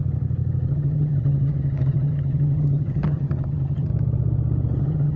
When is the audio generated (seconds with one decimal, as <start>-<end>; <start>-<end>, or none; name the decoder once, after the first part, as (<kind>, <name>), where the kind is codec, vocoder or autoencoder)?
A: 0.7-3.9 (vocoder, HiFi-GAN); 4.8-5.2